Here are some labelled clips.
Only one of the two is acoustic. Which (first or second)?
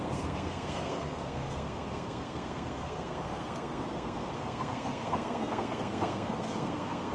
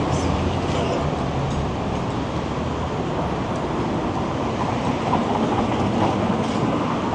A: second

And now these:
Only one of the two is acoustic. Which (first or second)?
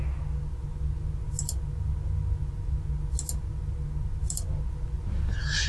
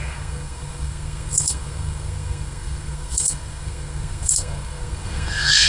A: first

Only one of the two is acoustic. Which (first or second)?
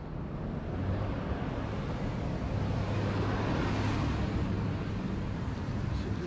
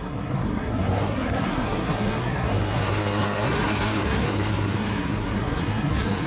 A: first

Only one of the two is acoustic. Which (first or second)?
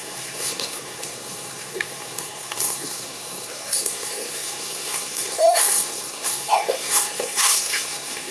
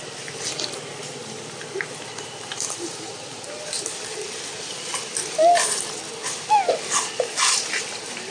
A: second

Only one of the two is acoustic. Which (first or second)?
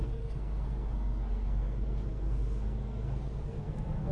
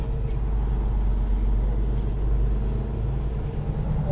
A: second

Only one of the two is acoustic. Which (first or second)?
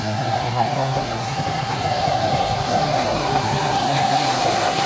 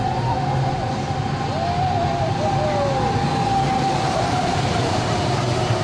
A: second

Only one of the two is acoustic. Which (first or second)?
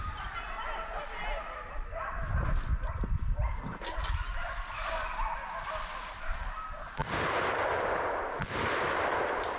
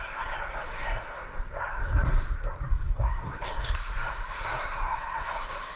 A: first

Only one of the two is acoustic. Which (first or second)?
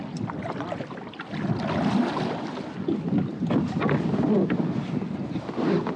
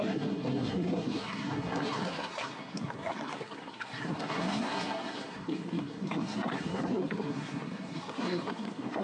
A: first